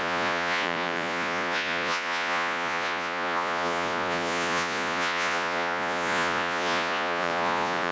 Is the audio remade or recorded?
remade